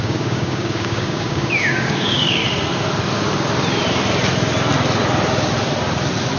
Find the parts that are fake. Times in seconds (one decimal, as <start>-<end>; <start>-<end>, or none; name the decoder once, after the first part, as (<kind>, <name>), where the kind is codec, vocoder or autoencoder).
0.0-2.4 (codec, DAC)